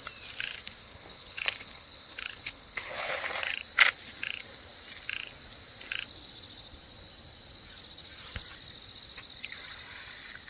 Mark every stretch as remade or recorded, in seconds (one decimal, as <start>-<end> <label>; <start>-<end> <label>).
0.0-0.8 recorded; 0.8-3.1 remade; 3.1-10.5 recorded